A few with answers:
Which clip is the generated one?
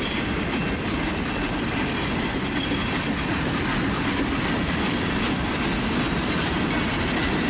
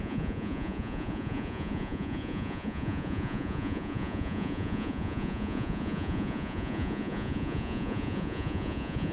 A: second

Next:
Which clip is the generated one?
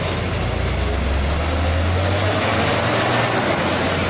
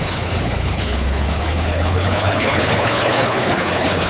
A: second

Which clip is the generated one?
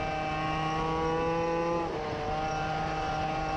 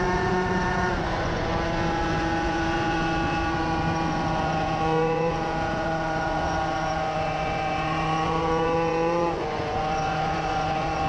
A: second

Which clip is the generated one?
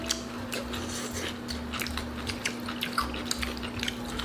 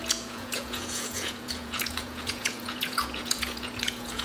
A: second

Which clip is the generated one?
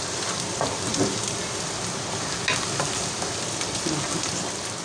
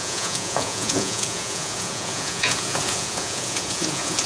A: second